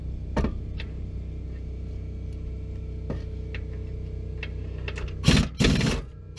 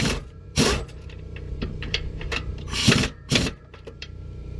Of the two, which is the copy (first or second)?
second